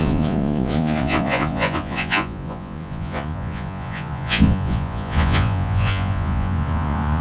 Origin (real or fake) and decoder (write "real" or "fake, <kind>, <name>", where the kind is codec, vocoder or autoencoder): fake, vocoder, Vocos